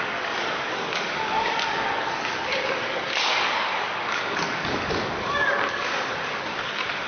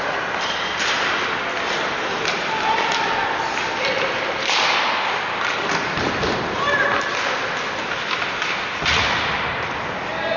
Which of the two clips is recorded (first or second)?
second